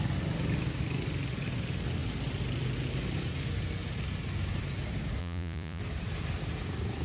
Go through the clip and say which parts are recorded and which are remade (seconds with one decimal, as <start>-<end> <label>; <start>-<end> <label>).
0.0-5.2 recorded; 5.2-5.8 remade; 5.8-7.0 recorded